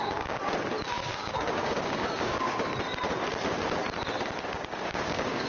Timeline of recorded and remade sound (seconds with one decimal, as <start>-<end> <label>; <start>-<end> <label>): 0.0-0.4 remade; 0.4-1.0 recorded; 1.0-2.7 remade; 2.7-4.4 recorded; 4.4-5.5 remade

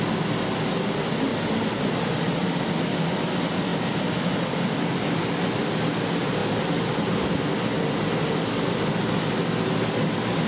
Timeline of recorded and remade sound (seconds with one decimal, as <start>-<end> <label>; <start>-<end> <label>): 0.0-10.5 recorded

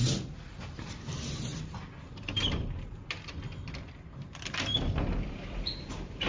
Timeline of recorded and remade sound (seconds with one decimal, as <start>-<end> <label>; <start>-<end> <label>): 0.0-6.3 recorded

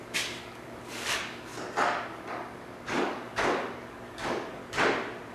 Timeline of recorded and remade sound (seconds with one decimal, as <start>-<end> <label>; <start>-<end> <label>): 0.0-1.5 remade; 1.5-2.1 recorded; 2.1-4.6 remade; 4.6-5.3 recorded